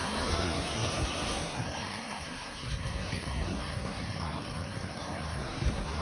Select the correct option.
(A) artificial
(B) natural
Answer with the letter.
A